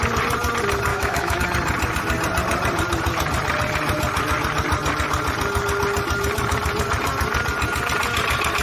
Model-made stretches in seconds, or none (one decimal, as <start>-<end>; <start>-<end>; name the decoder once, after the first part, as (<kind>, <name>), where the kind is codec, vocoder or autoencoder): 0.9-1.4 (autoencoder, DAC-VAE)